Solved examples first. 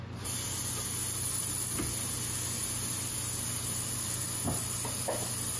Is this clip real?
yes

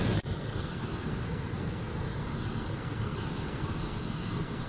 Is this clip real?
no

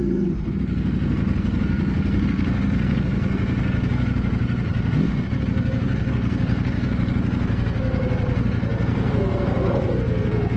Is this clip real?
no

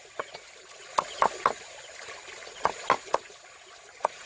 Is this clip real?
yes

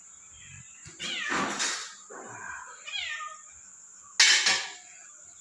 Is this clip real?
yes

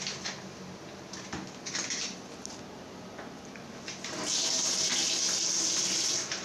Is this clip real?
yes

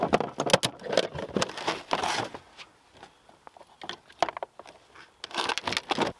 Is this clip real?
yes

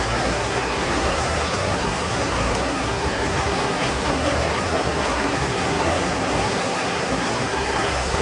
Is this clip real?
no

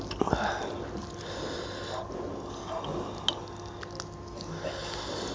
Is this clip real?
yes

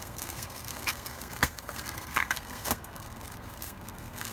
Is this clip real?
no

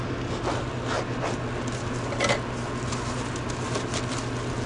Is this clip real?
yes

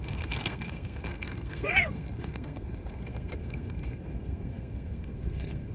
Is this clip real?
no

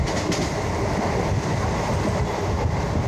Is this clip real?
yes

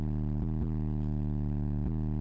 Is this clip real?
yes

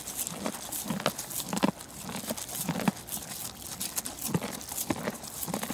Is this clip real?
yes